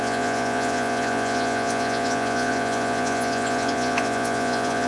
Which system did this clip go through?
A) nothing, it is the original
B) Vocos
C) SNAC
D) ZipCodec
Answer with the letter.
B